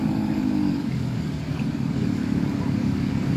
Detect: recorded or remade remade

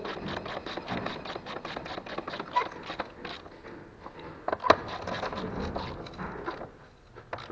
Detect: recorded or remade recorded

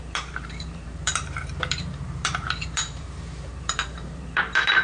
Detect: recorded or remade remade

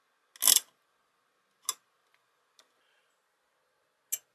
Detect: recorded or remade recorded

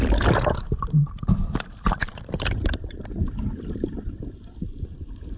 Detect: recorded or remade recorded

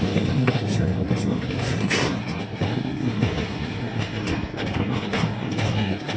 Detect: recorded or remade remade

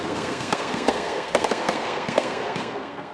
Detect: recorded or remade remade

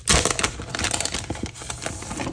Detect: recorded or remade recorded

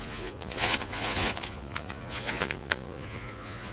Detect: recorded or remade remade